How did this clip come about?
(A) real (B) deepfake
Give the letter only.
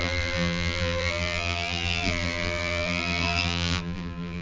B